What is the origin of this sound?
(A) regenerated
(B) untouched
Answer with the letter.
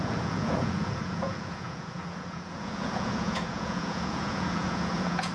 A